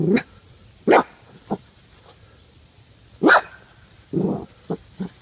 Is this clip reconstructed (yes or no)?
no